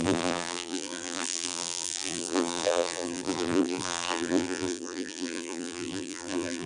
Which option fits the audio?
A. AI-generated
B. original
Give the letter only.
A